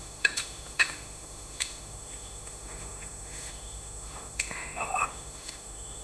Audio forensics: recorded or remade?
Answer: remade